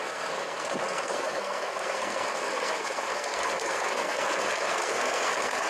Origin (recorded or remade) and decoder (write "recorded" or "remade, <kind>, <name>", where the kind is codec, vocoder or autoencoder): remade, codec, SNAC